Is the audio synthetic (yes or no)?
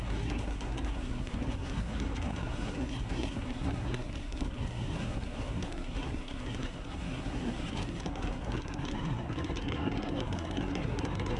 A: yes